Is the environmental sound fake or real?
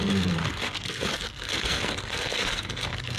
fake